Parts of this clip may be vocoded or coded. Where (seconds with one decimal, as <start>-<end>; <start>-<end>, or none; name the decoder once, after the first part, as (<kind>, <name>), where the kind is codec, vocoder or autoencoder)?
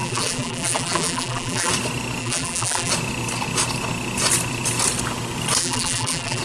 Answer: 0.0-1.7 (vocoder, BigVGAN v2); 2.2-2.9; 5.6-6.4